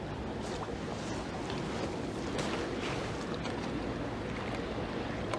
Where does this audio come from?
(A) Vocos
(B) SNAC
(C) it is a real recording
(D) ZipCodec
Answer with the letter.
C